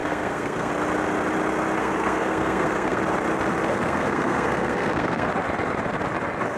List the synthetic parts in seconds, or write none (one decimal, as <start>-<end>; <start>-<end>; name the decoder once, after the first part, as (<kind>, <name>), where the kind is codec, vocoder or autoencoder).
0.0-0.7 (codec, SNAC); 1.8-3.0; 3.7-5.3